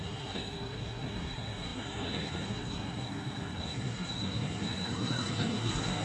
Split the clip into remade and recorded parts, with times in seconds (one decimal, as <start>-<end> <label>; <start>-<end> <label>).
0.0-6.0 remade